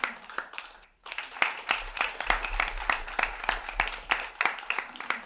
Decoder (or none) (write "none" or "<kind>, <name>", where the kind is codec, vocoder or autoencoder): vocoder, BigVGAN v2